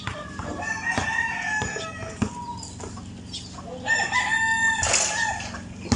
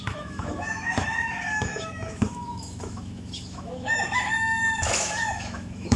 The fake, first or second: second